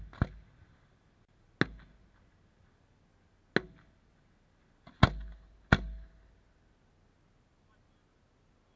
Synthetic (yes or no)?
no